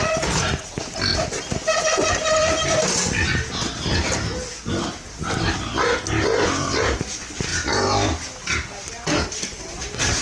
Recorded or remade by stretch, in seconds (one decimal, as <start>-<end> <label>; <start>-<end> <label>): 0.0-10.2 recorded